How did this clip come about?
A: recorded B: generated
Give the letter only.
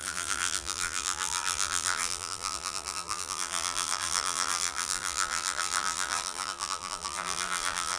B